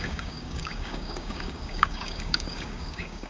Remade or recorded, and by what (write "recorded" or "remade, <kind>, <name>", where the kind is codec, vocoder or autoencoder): remade, codec, DAC